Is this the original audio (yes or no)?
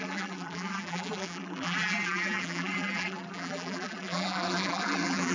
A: no